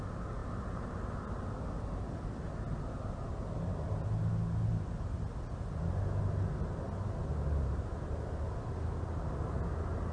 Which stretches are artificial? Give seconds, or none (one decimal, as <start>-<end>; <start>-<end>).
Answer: none